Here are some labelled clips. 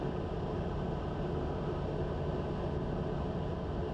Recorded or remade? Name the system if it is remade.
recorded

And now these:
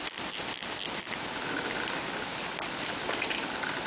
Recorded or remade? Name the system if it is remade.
recorded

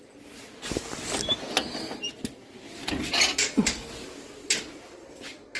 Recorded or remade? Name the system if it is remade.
recorded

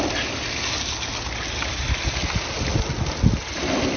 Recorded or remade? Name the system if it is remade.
recorded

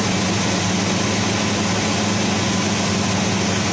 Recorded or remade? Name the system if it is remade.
recorded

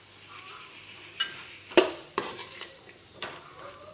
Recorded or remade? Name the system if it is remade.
remade, vocoder, BigVGAN v2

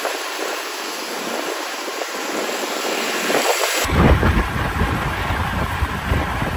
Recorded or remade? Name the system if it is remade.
remade, vocoder, BigVGAN v2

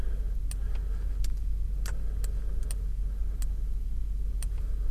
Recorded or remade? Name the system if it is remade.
recorded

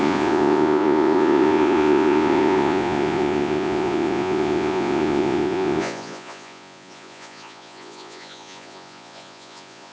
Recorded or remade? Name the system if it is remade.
remade, vocoder, Vocos